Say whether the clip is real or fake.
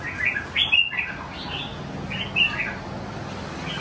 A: real